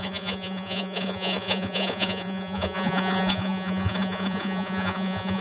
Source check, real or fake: fake